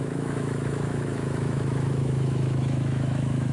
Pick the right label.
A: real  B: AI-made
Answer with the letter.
B